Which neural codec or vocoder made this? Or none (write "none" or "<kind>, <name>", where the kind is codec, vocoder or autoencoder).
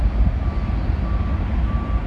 none